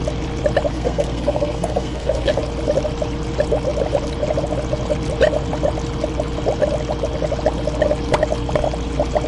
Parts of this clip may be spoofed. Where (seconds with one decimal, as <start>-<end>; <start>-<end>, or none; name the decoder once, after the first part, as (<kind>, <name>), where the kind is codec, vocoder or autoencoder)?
0.7-2.4 (codec, SNAC)